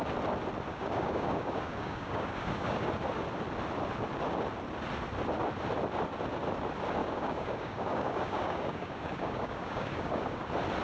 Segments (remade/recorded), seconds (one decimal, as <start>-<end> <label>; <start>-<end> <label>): 0.0-0.7 recorded; 0.7-2.9 remade; 2.9-7.0 recorded; 7.0-10.4 remade; 10.4-10.8 recorded